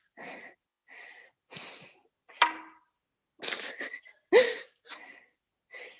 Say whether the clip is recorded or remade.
recorded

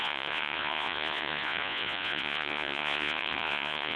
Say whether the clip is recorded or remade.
remade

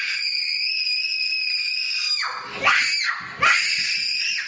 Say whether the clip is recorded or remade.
recorded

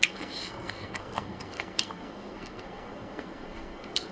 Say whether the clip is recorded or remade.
remade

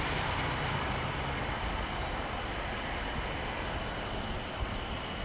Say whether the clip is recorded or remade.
recorded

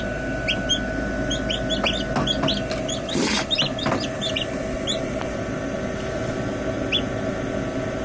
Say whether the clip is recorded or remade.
recorded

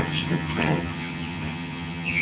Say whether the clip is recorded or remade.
remade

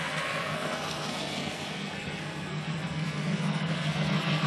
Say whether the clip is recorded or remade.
remade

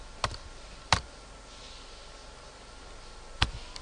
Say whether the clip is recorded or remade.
recorded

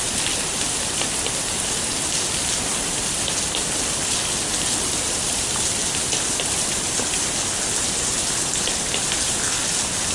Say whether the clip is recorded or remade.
recorded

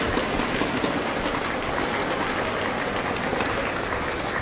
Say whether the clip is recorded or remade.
recorded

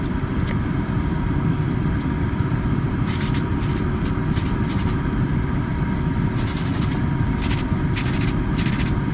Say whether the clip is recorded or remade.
remade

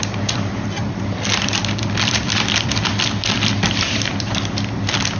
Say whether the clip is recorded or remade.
remade